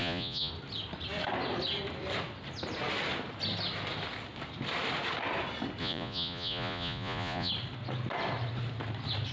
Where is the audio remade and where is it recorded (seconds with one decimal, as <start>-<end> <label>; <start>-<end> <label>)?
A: 0.0-0.5 remade; 0.5-5.8 recorded; 5.8-7.5 remade; 7.5-9.3 recorded